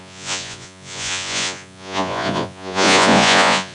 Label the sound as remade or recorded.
remade